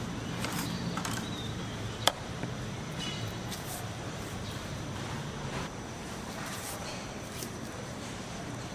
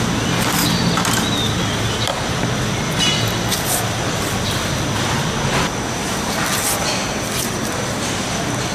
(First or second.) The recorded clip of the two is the second